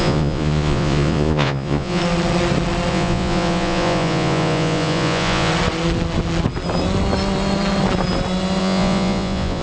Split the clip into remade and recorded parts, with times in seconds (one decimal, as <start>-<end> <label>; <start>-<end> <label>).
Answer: 0.0-2.0 remade; 2.0-2.9 recorded; 2.9-5.5 remade; 5.5-8.6 recorded; 8.6-9.6 remade